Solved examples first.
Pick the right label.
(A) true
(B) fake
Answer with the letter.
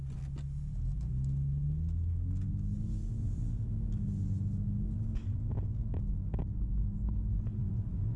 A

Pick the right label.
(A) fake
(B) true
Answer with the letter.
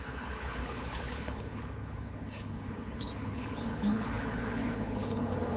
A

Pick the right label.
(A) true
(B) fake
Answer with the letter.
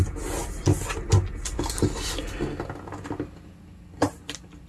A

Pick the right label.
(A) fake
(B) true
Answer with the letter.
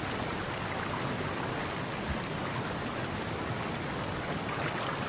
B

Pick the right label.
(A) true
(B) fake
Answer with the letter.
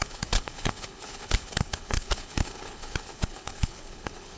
B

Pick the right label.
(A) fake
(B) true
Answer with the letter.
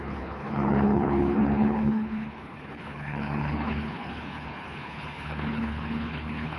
A